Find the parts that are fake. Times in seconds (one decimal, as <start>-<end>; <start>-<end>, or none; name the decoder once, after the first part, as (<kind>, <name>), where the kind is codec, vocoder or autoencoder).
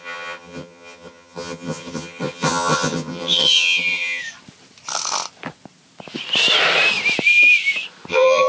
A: 0.0-4.2 (vocoder, HiFi-GAN); 8.1-8.5